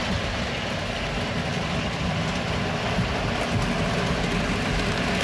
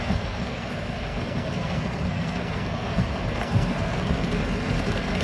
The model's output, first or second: second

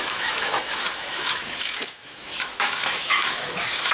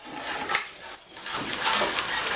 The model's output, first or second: first